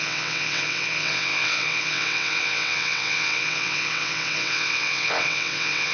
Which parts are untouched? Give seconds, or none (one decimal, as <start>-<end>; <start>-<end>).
none